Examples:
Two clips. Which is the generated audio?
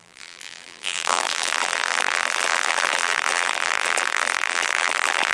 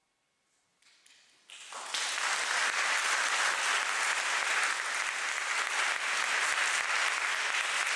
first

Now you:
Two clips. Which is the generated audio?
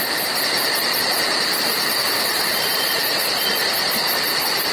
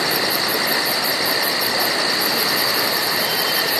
first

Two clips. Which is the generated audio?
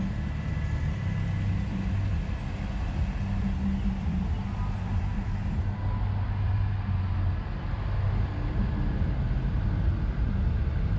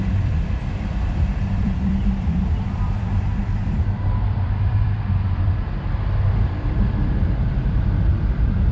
second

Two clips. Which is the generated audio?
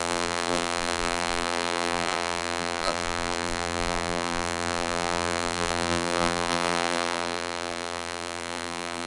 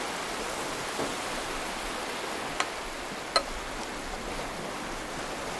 first